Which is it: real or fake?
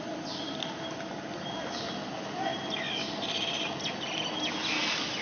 real